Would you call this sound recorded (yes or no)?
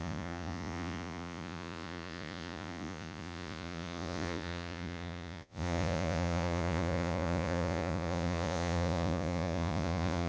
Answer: no